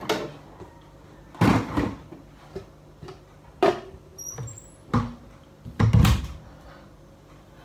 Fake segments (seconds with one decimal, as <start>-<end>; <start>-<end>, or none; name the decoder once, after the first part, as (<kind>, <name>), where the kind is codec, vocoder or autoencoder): none